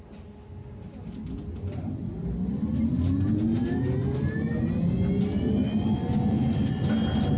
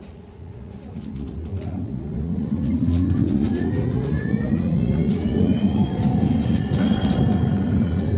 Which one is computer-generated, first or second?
second